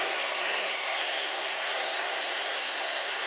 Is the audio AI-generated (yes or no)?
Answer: yes